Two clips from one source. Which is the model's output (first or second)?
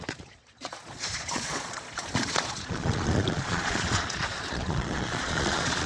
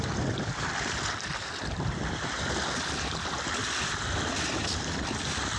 first